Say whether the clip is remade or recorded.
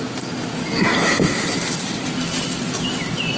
recorded